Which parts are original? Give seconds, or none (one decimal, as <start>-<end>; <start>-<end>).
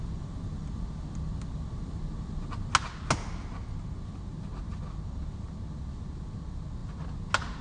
0.0-7.6